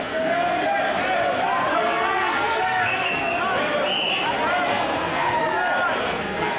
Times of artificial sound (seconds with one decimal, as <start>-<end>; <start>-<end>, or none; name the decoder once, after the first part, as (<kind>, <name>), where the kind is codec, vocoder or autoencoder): 0.0-0.6 (codec, SNAC); 1.7-3.3; 4.7-5.4; 6.0-6.6